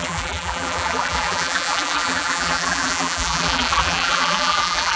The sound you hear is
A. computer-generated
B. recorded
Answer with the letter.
A